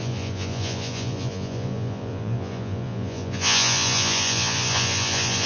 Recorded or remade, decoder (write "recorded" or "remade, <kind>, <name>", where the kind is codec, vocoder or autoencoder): remade, vocoder, Vocos